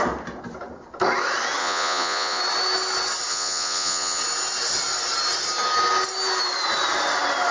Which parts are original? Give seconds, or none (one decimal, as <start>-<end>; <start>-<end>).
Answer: 0.0-1.6; 2.4-3.3; 4.2-7.5